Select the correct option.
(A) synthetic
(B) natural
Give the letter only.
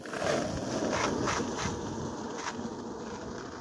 B